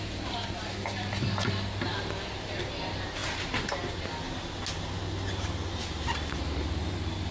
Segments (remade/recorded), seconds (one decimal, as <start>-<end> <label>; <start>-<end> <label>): 0.0-7.3 recorded